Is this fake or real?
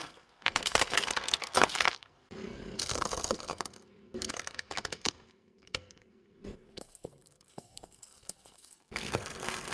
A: fake